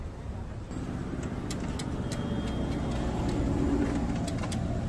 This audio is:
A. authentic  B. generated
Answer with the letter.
A